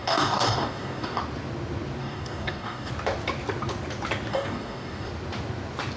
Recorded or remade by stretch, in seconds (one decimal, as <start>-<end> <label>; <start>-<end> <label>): 0.0-1.2 remade; 1.2-2.0 recorded; 2.0-2.9 remade; 2.9-4.3 recorded; 4.3-5.1 remade; 5.1-6.0 recorded